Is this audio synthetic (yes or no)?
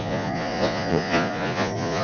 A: yes